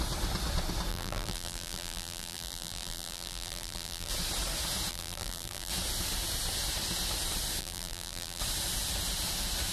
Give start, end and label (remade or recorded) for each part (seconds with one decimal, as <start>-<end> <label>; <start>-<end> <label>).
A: 0.0-0.9 recorded; 0.9-4.1 remade; 4.1-4.9 recorded; 4.9-5.7 remade; 5.7-7.6 recorded; 7.6-8.4 remade; 8.4-9.7 recorded